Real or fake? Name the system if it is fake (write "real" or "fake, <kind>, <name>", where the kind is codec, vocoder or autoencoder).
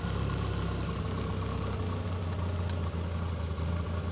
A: real